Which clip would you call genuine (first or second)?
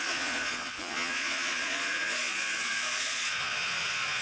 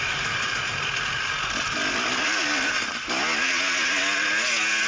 second